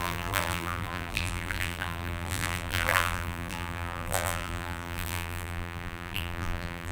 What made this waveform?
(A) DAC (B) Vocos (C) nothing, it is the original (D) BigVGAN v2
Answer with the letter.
D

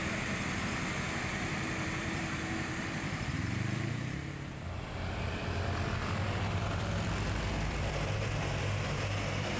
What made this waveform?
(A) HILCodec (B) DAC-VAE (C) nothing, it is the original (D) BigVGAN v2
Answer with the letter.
D